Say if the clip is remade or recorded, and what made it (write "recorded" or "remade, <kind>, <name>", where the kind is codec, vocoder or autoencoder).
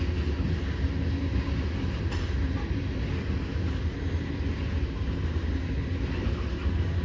recorded